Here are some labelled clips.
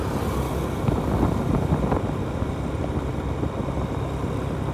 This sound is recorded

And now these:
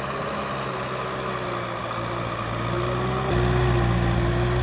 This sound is recorded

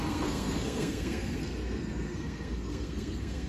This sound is remade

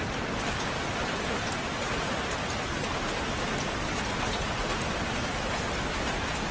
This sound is recorded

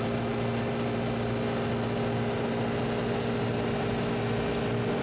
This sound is recorded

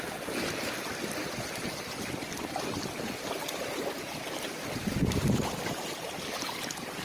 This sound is recorded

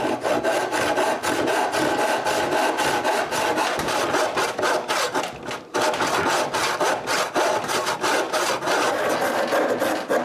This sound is recorded